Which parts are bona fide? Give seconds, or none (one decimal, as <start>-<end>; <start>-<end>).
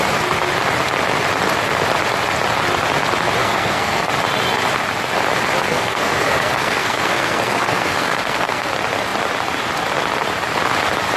0.0-3.4; 4.1-5.6; 8.7-11.2